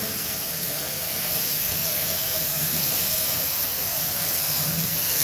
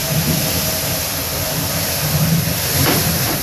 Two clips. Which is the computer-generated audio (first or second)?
first